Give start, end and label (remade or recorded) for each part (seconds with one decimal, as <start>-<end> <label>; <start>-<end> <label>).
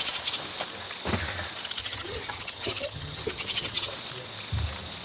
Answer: 0.0-1.8 recorded; 1.8-3.9 remade; 3.9-5.0 recorded